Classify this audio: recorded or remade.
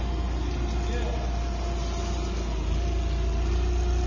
recorded